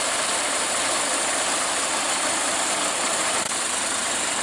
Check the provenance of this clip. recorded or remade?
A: remade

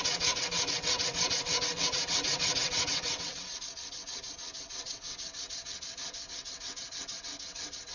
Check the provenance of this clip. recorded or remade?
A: remade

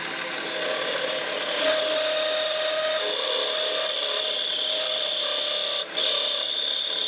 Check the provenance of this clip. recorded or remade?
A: recorded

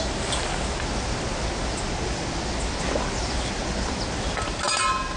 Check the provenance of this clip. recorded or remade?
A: recorded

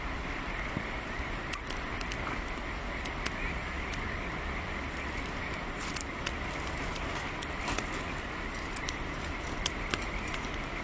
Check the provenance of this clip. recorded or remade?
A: recorded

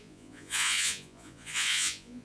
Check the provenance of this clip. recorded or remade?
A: remade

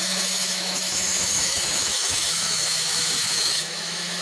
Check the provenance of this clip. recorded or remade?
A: remade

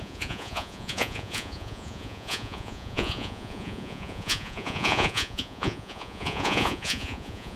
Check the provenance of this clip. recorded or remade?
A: remade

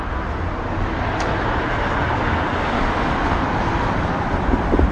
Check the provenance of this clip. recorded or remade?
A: recorded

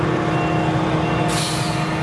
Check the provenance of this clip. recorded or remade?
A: recorded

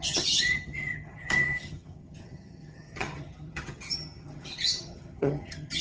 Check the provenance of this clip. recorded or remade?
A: remade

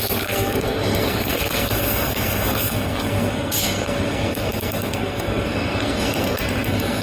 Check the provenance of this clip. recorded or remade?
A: remade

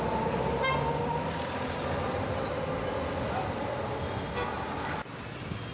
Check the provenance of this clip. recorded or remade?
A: recorded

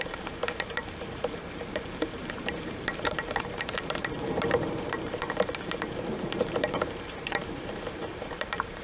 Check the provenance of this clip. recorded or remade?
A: remade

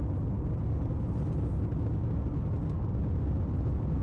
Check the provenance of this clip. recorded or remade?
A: recorded